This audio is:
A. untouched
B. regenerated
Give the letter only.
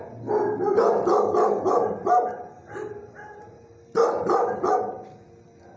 A